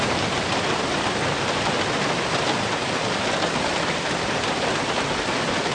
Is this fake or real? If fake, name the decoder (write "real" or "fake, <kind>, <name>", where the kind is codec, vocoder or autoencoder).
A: real